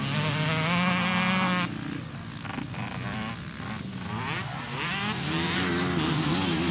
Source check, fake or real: real